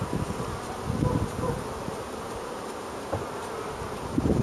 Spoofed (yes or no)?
no